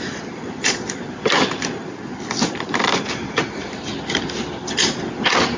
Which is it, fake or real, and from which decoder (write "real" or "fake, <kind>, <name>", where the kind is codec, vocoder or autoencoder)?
fake, vocoder, BigVGAN v2